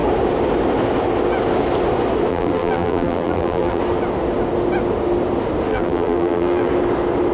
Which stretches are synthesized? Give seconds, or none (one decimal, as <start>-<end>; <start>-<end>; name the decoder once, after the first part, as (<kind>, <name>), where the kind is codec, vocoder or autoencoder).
2.3-3.8 (vocoder, BigVGAN v2); 5.7-6.7

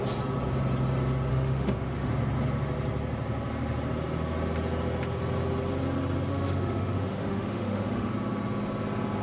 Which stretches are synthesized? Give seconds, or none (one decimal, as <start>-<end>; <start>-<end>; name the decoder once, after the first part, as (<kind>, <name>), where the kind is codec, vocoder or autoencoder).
1.3-2.1 (autoencoder, DAC-VAE); 6.3-8.1

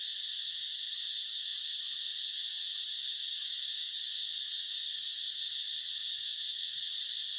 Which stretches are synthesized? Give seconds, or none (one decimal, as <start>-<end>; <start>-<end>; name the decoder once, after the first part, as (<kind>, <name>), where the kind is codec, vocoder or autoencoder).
none

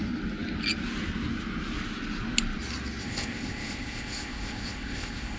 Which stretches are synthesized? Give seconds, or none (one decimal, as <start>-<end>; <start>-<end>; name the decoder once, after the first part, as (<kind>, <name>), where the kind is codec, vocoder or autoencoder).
3.0-5.4 (codec, ZipCodec)